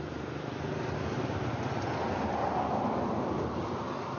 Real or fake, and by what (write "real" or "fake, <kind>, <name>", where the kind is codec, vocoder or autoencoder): real